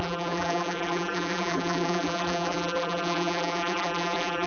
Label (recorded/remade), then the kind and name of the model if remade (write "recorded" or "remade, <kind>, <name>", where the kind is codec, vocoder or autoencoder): remade, vocoder, BigVGAN v2